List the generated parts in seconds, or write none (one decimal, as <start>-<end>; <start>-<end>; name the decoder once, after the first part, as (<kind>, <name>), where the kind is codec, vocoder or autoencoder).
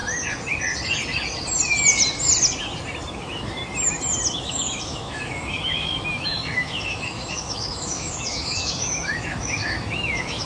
3.1-3.6 (autoencoder, DAC-VAE); 4.3-10.5